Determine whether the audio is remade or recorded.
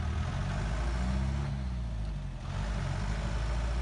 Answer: recorded